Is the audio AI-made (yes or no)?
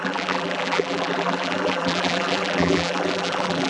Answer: yes